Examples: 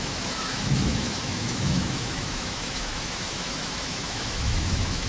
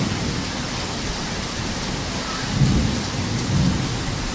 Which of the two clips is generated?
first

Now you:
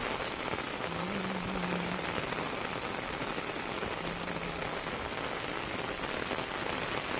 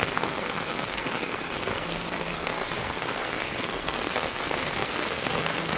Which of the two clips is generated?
second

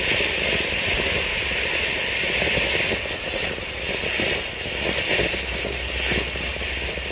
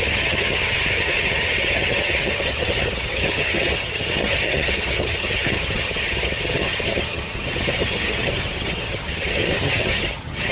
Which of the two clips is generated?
second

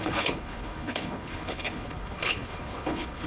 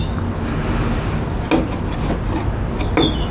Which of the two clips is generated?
first